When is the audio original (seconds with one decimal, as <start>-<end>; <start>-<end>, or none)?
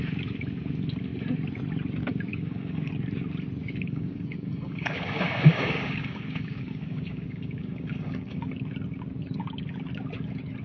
0.0-2.3; 2.9-3.6; 8.5-10.6